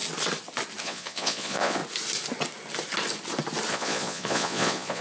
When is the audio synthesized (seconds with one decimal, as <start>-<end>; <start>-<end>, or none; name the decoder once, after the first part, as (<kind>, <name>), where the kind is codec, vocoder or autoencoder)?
0.8-1.8 (vocoder, Vocos); 3.7-5.0